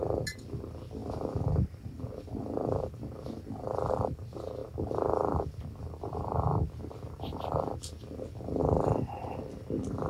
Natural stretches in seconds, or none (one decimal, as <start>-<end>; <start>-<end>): 0.0-10.1

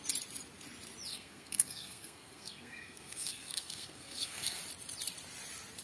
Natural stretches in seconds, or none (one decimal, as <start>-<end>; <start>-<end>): 0.0-1.1; 4.6-5.8

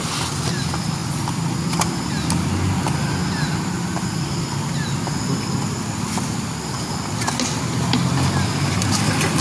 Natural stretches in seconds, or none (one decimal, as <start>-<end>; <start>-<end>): 0.0-9.4

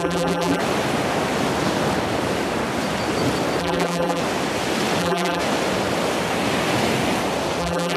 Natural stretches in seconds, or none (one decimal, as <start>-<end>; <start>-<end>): 0.6-3.6; 4.2-5.0; 5.4-7.6

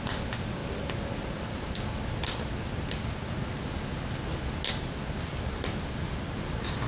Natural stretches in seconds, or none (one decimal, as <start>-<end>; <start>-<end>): 0.0-6.9

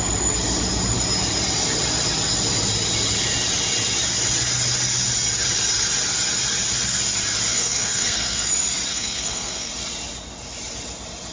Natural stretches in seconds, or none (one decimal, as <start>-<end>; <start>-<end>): 0.0-7.5; 8.5-8.9; 9.7-11.3

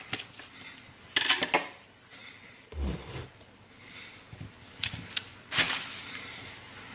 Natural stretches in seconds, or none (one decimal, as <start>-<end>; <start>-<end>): 0.0-6.9